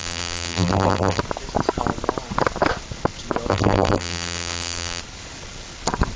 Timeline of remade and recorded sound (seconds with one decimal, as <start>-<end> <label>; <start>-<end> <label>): 0.0-1.2 remade; 1.2-3.5 recorded; 3.5-5.0 remade; 5.0-6.2 recorded